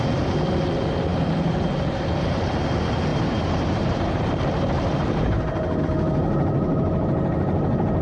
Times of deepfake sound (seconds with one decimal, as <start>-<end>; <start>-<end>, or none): 1.1-2.5; 3.1-5.8; 6.2-8.0